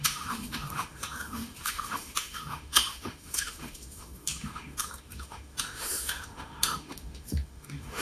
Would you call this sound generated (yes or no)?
yes